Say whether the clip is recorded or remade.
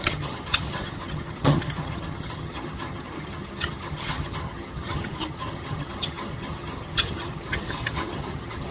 remade